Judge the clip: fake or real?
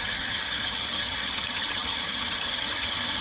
fake